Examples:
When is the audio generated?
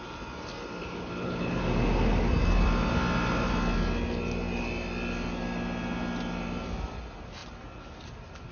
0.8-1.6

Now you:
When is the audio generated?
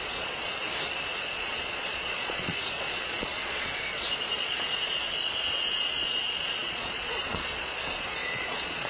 0.0-0.6; 1.3-8.9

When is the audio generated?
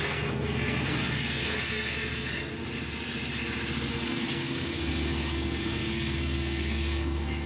0.0-2.5; 3.9-7.5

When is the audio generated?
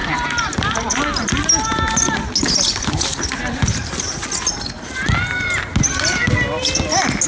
none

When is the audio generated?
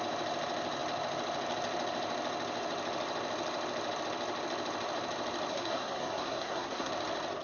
5.5-6.9